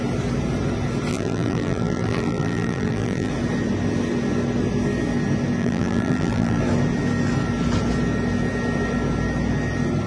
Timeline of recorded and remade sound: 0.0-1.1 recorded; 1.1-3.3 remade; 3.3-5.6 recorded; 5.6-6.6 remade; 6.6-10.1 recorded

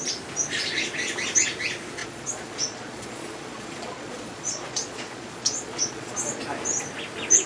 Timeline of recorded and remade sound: 0.0-2.0 recorded; 2.0-6.4 remade; 6.4-7.5 recorded

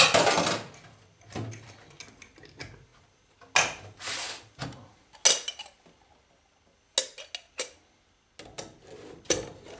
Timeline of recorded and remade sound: 0.0-9.8 recorded